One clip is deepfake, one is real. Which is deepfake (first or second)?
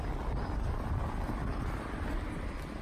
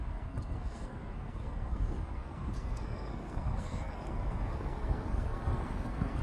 second